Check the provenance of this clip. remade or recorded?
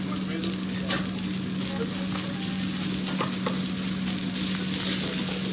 recorded